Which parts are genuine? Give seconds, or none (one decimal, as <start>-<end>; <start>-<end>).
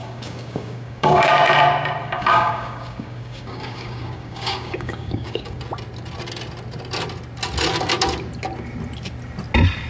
1.3-2.0; 5.6-9.9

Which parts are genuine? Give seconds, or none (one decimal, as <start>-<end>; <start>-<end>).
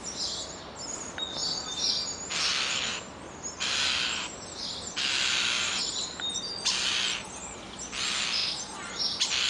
0.0-9.5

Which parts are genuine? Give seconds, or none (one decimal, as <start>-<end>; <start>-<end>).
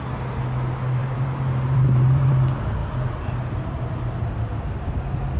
0.0-1.0; 2.3-2.8; 4.3-5.4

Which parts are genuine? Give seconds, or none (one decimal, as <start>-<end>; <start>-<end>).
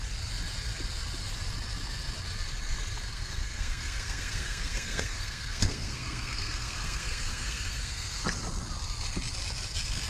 0.0-3.1; 8.2-10.1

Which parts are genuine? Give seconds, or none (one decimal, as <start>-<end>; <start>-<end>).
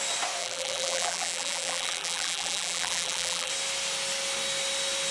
0.0-0.4; 3.5-5.1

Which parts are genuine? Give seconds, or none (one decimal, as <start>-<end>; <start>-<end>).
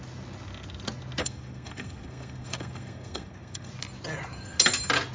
0.0-1.2; 3.7-5.1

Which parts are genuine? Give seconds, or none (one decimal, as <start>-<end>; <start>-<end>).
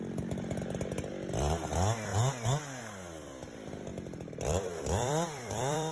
0.0-3.9